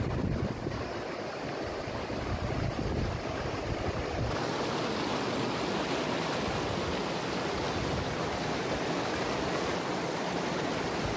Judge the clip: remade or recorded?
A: recorded